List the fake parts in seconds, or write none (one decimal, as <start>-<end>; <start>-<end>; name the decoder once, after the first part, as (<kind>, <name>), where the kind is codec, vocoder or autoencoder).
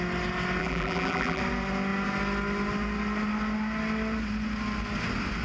0.6-1.4 (vocoder, BigVGAN v2)